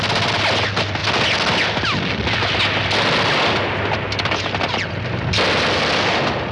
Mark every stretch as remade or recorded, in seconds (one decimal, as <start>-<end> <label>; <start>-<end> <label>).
0.0-6.5 recorded